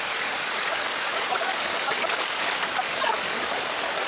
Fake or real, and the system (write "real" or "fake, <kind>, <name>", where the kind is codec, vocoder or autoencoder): fake, codec, DAC